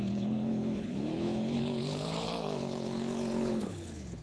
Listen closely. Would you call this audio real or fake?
fake